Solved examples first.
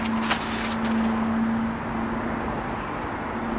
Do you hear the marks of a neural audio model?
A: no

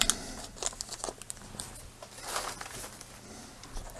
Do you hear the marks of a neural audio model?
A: no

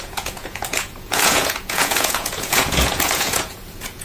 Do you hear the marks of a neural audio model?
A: yes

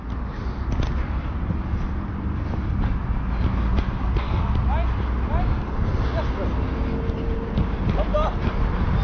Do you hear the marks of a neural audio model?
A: no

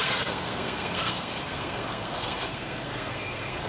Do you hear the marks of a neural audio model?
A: yes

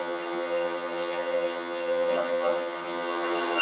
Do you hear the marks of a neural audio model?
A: yes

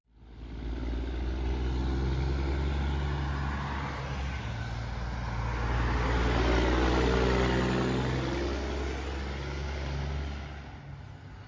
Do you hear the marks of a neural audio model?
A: no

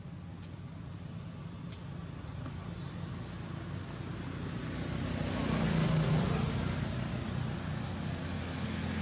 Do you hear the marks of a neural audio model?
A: no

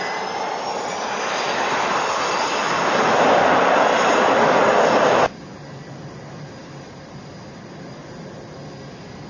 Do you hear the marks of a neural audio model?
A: no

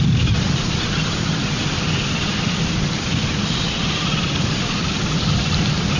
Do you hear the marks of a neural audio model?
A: no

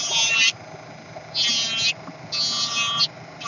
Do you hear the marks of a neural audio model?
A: no